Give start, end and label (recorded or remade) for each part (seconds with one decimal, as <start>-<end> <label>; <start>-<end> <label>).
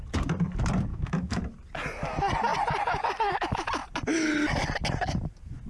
0.0-0.9 recorded; 0.9-1.4 remade; 1.4-5.7 recorded